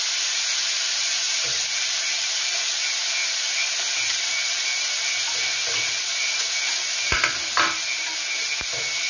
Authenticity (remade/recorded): recorded